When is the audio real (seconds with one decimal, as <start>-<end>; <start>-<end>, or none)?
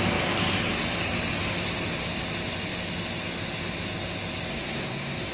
0.0-4.5